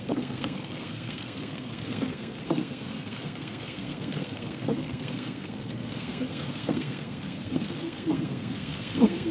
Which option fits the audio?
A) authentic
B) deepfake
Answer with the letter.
B